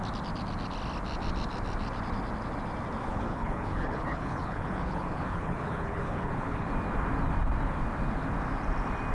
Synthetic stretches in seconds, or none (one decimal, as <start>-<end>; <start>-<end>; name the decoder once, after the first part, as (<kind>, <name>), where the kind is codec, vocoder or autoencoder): 3.0-6.7 (codec, HILCodec)